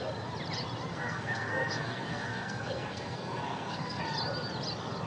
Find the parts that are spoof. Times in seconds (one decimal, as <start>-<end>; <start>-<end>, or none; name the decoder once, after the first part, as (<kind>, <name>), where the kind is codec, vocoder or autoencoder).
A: 0.9-4.0 (codec, SNAC)